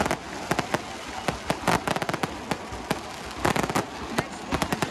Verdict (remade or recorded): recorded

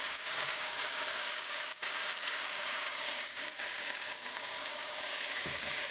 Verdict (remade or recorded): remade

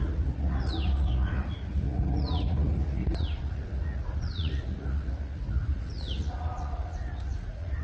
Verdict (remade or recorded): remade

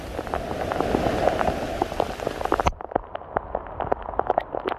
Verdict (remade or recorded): recorded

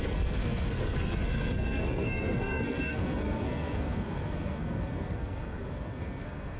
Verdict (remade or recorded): remade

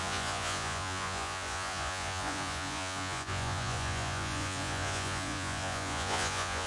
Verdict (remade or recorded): remade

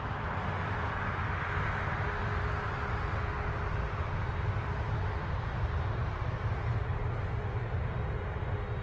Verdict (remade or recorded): recorded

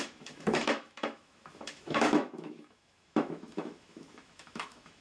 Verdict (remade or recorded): remade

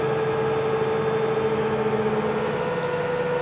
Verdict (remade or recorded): recorded